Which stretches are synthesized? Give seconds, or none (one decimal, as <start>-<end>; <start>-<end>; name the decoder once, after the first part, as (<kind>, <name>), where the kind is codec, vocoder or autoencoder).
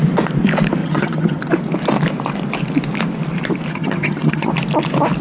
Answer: 0.8-1.4 (vocoder, HiFi-GAN); 3.7-4.5